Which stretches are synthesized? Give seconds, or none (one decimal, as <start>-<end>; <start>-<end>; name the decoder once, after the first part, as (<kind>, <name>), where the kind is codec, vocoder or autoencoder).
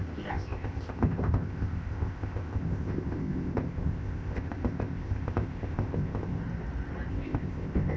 0.0-6.4 (codec, ZipCodec); 7.1-8.0